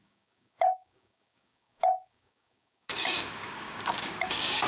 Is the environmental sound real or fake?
fake